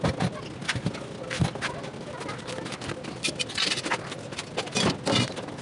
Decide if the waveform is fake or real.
real